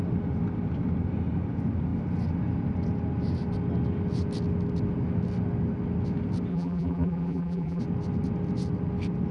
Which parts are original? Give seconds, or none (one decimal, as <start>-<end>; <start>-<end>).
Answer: 0.0-6.5; 7.8-9.3